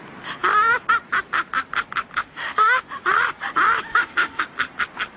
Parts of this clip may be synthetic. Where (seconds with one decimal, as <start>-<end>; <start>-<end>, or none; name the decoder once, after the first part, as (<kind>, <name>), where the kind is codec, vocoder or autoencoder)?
2.2-2.8 (autoencoder, DAC-VAE); 3.9-4.4